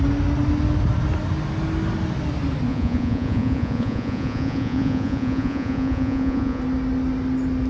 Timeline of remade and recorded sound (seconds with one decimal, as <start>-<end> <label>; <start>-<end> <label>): 0.0-2.7 recorded; 2.7-6.6 remade; 6.6-7.7 recorded